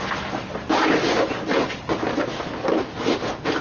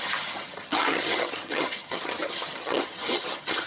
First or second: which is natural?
first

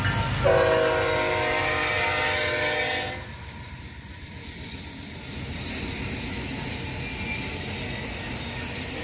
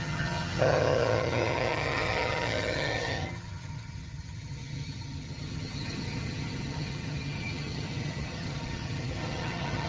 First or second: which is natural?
first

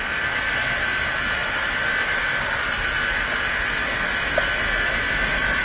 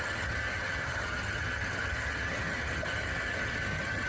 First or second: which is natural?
first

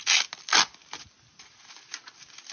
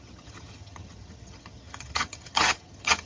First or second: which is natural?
first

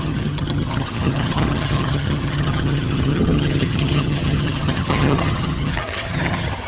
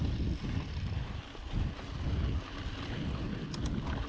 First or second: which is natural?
second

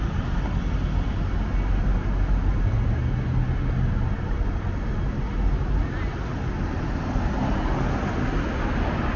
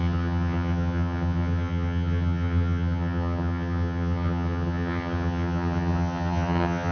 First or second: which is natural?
first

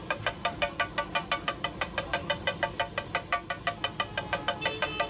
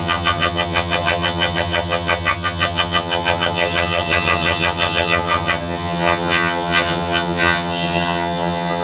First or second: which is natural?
first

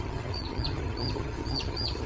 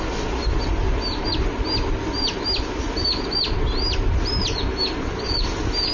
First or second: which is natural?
second